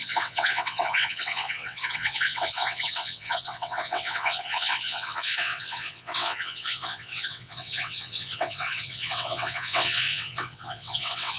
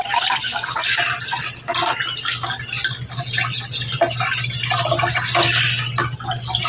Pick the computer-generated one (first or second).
first